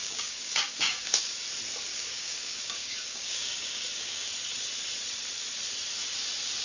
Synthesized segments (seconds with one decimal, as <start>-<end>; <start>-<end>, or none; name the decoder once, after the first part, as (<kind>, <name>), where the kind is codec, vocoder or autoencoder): 0.0-1.4 (codec, DAC); 1.9-4.3